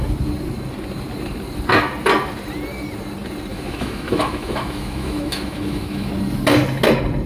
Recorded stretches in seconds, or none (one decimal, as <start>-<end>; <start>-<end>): 0.0-3.5; 6.1-7.3